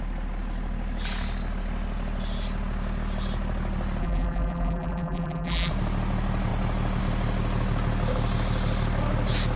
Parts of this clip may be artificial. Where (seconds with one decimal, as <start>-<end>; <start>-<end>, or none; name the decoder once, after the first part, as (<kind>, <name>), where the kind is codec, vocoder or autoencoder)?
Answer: 4.0-5.7 (vocoder, BigVGAN v2)

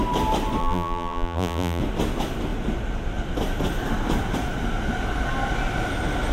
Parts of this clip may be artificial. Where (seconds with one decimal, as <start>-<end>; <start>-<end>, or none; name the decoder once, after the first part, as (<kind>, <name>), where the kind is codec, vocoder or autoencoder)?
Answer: 0.6-1.8 (vocoder, BigVGAN v2)

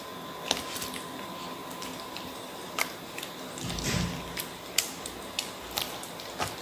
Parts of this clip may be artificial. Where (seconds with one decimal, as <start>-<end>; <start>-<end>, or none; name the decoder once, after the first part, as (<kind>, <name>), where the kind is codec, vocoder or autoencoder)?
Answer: 1.6-3.6 (vocoder, BigVGAN v2)

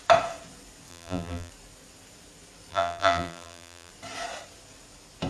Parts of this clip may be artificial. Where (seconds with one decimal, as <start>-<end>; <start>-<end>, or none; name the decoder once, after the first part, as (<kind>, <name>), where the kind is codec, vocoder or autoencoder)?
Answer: 0.9-1.5 (vocoder, BigVGAN v2); 2.7-3.9

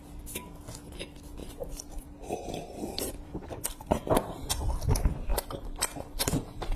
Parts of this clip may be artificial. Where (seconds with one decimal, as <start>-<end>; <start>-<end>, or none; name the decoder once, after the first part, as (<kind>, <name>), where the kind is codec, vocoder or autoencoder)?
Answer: 1.4-4.5 (vocoder, BigVGAN v2); 5.3-6.8